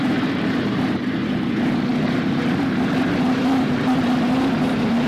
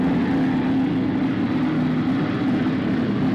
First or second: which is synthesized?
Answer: first